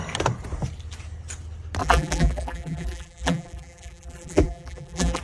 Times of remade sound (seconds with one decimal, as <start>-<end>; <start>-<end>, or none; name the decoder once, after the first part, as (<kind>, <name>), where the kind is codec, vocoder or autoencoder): 1.8-5.2 (vocoder, BigVGAN v2)